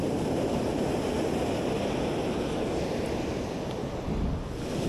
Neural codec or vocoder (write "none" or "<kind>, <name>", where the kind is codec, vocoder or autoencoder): none